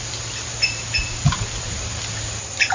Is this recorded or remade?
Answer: recorded